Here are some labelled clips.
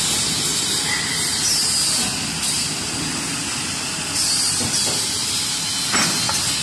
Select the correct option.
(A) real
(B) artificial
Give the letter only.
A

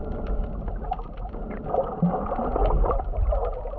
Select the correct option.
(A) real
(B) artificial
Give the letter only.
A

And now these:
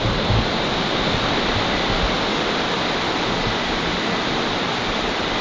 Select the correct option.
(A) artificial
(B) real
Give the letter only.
B